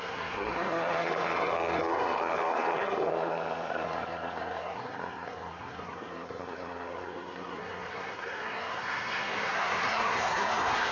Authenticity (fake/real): fake